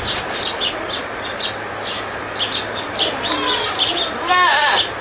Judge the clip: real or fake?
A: real